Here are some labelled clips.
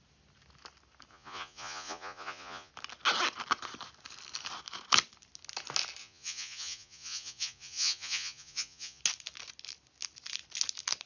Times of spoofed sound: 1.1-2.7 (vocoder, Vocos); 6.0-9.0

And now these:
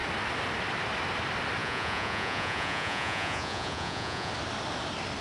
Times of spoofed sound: 1.6-4.3 (vocoder, Vocos)

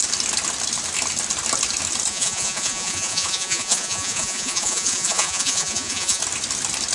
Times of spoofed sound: 2.1-6.2 (vocoder, Vocos)

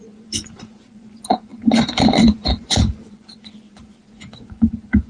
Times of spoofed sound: 0.0-5.1 (vocoder, Vocos)

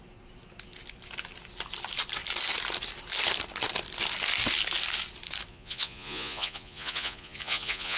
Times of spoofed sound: 5.5-8.0 (vocoder, Vocos)